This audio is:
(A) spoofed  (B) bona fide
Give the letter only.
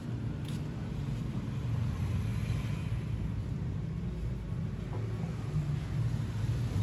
B